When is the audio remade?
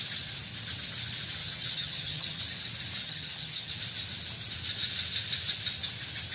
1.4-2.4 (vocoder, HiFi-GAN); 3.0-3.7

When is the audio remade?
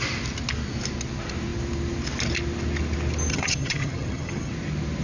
3.3-4.5 (vocoder, HiFi-GAN)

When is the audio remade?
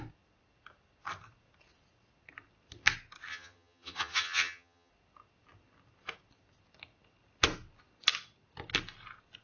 3.3-4.9 (vocoder, HiFi-GAN)